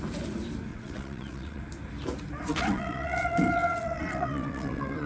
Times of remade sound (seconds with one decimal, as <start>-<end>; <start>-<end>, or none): 0.7-1.6; 2.5-5.1